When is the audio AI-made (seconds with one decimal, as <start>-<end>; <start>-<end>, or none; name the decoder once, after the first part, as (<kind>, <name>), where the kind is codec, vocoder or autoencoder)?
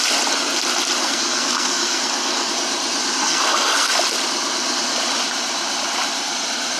1.0-2.5 (codec, SNAC); 3.2-3.9